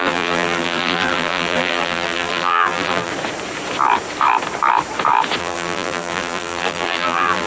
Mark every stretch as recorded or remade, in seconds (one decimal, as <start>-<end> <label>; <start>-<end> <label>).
0.0-3.1 remade; 3.1-5.4 recorded; 5.4-7.5 remade